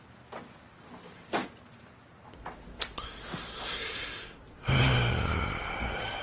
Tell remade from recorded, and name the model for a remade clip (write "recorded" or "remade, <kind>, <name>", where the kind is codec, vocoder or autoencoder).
recorded